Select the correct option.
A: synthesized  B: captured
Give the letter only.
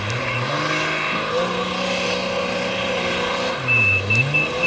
B